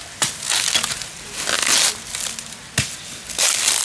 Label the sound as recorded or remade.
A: recorded